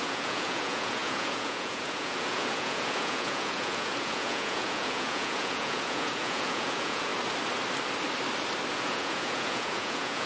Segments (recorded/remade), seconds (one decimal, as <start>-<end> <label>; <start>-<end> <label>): 0.0-7.1 remade; 7.1-8.7 recorded; 8.7-10.3 remade